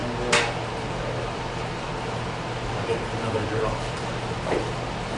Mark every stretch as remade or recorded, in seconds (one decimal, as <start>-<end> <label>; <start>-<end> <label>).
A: 0.0-0.5 recorded; 0.5-1.9 remade; 1.9-2.7 recorded; 2.7-5.2 remade